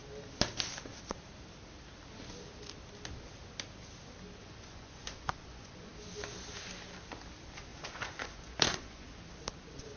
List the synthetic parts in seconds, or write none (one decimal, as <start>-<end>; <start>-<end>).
4.4-5.9; 7.7-9.3